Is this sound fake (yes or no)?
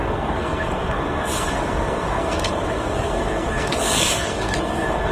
yes